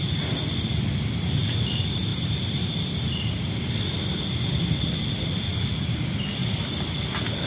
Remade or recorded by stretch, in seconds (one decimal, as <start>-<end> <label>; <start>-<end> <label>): 0.0-2.1 recorded; 2.1-5.4 remade; 5.4-6.4 recorded; 6.4-7.0 remade; 7.0-7.5 recorded